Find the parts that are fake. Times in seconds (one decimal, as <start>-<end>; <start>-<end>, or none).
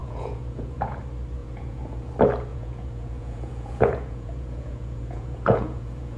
0.0-1.0; 1.4-2.1; 2.5-6.2